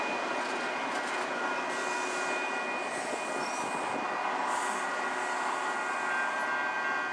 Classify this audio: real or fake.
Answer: real